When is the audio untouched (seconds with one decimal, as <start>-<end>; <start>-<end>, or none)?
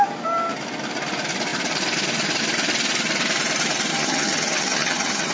0.0-3.9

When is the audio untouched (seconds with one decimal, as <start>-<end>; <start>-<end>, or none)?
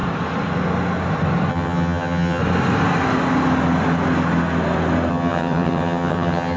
0.0-1.5; 2.4-5.1